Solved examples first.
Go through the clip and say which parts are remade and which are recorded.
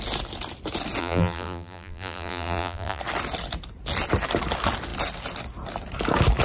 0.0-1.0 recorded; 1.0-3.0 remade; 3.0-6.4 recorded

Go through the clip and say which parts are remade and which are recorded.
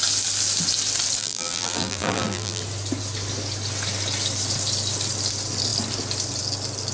0.0-1.2 recorded; 1.2-2.6 remade; 2.6-6.9 recorded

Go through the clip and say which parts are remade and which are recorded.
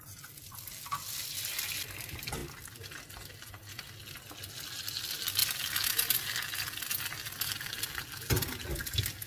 0.0-9.3 recorded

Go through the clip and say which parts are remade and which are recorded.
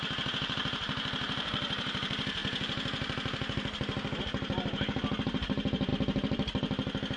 0.0-7.2 remade